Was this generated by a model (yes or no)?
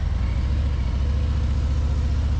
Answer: no